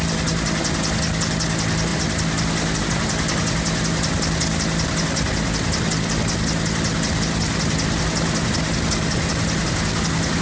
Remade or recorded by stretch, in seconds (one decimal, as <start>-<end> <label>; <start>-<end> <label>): 0.0-10.4 recorded